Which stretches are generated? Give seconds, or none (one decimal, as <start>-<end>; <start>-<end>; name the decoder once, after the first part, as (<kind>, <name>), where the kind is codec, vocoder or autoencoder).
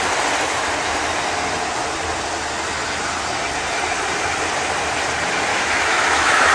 5.5-6.5 (autoencoder, DAC-VAE)